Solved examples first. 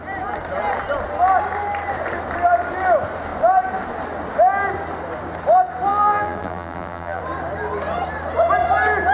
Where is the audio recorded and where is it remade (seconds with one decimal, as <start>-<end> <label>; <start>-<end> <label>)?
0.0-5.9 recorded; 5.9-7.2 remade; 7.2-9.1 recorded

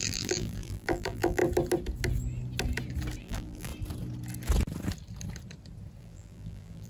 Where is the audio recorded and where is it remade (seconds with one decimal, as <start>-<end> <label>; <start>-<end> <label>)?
0.0-1.4 remade; 1.4-3.2 recorded; 3.2-3.7 remade; 3.7-6.0 recorded; 6.0-6.9 remade

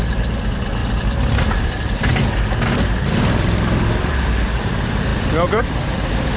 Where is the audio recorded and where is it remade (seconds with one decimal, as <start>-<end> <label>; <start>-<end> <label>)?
0.0-0.8 recorded; 0.8-4.6 remade; 4.6-5.1 recorded; 5.1-5.6 remade; 5.6-6.4 recorded

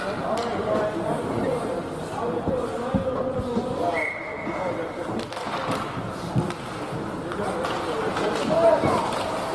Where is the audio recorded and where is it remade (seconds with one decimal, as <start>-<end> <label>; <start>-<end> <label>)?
0.0-9.5 recorded